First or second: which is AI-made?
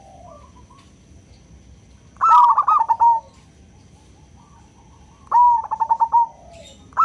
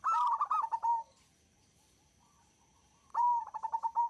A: second